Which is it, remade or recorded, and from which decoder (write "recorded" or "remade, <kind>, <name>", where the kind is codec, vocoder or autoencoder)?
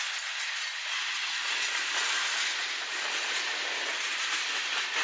recorded